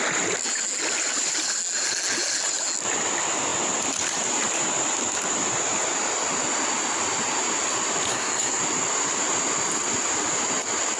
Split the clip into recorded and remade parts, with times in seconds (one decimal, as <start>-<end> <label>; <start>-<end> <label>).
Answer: 0.0-8.1 recorded; 8.1-8.6 remade; 8.6-11.0 recorded